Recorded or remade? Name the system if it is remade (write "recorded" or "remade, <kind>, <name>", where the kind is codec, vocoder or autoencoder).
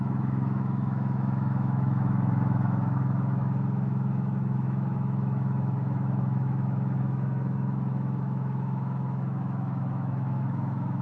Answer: remade, autoencoder, DAC-VAE